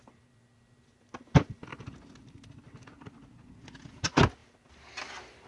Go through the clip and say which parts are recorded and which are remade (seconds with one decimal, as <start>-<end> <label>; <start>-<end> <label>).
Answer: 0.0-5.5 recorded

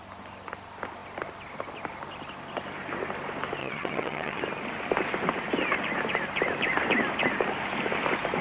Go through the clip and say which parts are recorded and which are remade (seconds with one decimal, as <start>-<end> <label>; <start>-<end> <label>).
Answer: 0.0-3.6 recorded; 3.6-4.4 remade; 4.4-8.4 recorded

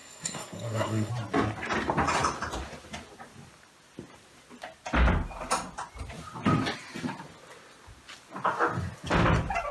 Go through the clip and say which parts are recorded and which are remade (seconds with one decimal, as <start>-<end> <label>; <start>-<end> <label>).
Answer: 0.0-1.1 remade; 1.1-9.7 recorded